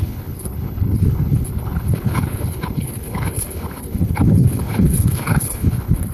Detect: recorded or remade remade